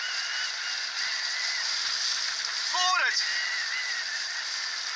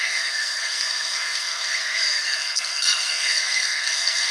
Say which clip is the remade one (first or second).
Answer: second